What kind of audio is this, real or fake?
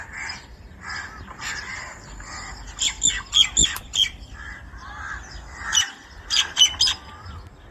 real